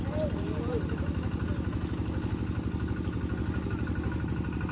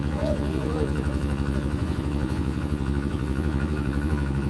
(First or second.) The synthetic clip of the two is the second